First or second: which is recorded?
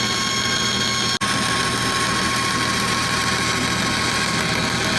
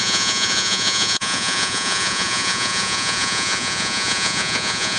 first